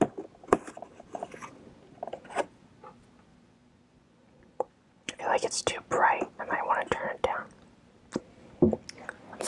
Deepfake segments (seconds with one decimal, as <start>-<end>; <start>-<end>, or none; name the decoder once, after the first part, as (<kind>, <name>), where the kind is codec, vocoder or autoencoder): 3.3-5.2 (vocoder, Vocos)